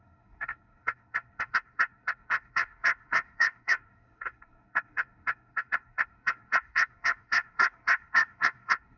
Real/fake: fake